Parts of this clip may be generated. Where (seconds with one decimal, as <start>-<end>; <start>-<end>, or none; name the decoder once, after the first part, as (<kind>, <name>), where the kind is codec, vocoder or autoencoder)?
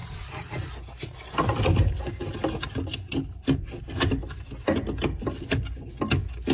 none